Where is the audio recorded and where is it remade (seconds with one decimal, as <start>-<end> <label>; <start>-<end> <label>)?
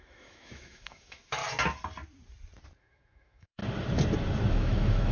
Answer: 0.0-1.4 remade; 1.4-2.8 recorded; 2.8-3.6 remade; 3.6-4.5 recorded; 4.5-5.1 remade